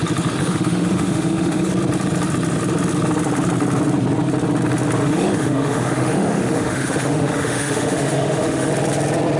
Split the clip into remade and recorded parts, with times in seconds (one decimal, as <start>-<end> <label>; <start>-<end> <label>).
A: 0.0-0.4 recorded; 0.4-1.7 remade; 1.7-5.0 recorded; 5.0-8.7 remade; 8.7-9.4 recorded